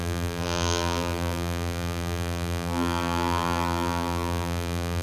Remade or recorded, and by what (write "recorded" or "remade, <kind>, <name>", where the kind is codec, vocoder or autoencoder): remade, vocoder, BigVGAN v2